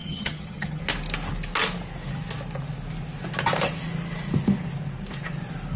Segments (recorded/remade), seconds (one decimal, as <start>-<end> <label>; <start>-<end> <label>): 0.0-0.8 remade; 0.8-5.8 recorded